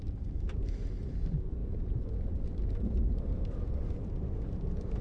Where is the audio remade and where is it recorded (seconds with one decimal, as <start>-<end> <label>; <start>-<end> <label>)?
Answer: 0.0-1.6 recorded; 1.6-2.2 remade; 2.2-5.0 recorded